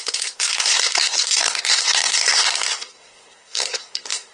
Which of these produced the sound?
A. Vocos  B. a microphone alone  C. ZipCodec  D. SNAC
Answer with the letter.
D